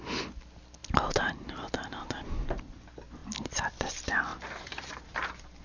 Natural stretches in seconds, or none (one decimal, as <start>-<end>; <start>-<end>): 0.0-0.8; 1.9-3.2; 3.9-4.3